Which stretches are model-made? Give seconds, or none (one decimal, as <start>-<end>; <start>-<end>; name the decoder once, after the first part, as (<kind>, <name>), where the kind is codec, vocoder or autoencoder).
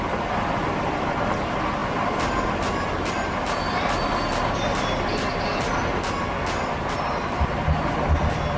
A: none